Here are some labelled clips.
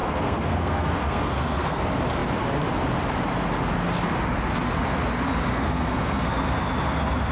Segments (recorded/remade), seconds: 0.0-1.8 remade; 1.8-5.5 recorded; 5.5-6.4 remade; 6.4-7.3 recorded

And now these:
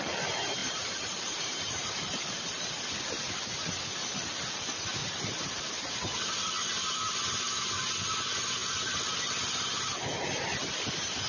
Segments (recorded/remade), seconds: 0.0-0.6 recorded; 0.6-1.9 remade; 1.9-5.0 recorded; 5.0-6.5 remade; 6.5-11.3 recorded

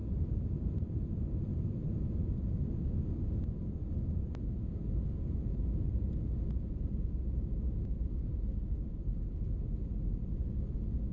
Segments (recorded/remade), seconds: 0.0-1.0 remade; 1.0-1.5 recorded; 1.5-2.1 remade; 2.1-11.1 recorded

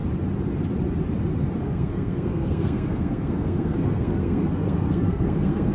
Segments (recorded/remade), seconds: 0.0-1.6 recorded; 1.6-5.7 remade

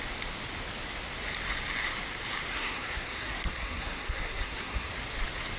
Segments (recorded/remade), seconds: 0.0-2.5 recorded; 2.5-4.9 remade; 4.9-5.6 recorded

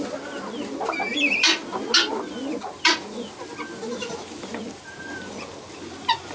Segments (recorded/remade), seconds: 0.0-6.3 recorded